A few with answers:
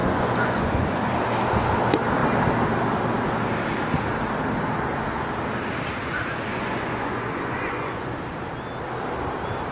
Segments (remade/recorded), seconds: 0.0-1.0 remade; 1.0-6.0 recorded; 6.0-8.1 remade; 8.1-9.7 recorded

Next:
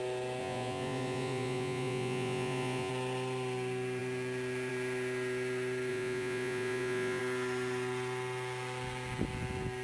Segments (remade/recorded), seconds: 0.0-0.4 recorded; 0.4-2.9 remade; 2.9-5.9 recorded; 5.9-7.2 remade; 7.2-9.8 recorded

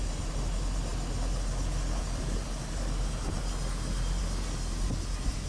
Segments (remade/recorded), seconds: 0.0-5.5 recorded

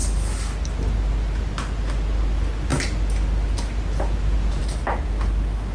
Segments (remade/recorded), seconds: 0.0-5.7 recorded

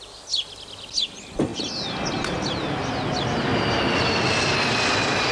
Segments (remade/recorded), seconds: 0.0-5.3 recorded

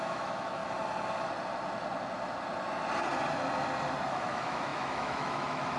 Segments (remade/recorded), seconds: 0.0-0.6 remade; 0.6-4.1 recorded; 4.1-5.8 remade

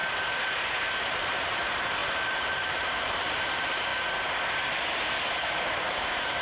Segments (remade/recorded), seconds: 0.0-1.0 recorded; 1.0-3.9 remade; 3.9-5.5 recorded; 5.5-6.4 remade